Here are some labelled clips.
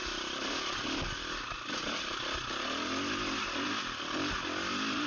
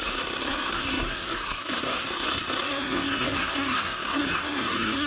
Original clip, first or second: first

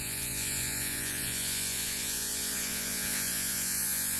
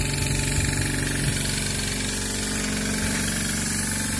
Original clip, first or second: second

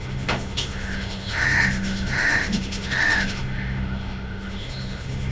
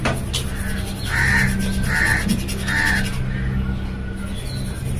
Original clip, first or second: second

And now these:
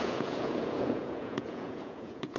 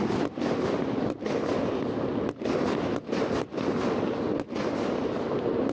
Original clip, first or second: second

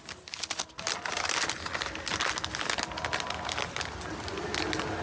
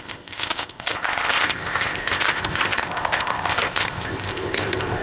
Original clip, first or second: first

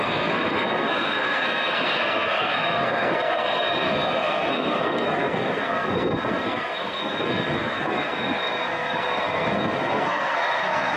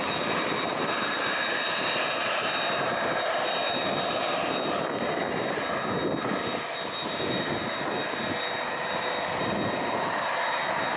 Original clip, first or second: second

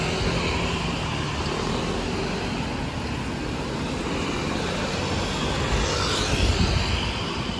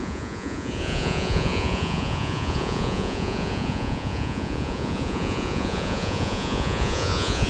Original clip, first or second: first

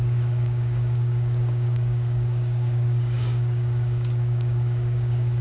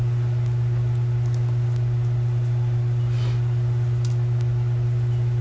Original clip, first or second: second